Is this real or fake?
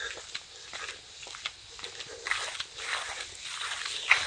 real